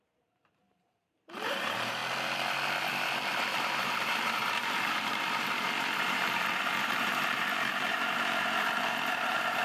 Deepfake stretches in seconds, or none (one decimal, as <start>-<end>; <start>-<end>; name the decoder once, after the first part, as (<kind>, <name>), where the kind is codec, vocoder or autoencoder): 0.0-2.0 (vocoder, BigVGAN v2); 3.6-9.6